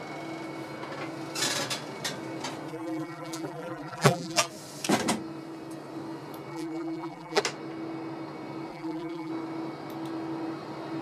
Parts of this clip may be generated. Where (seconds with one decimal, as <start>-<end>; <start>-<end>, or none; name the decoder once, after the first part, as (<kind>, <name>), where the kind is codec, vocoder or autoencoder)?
2.7-4.5 (vocoder, BigVGAN v2); 6.5-7.4; 8.7-9.3